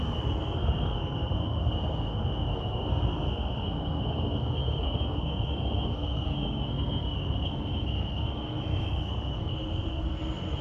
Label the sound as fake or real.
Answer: fake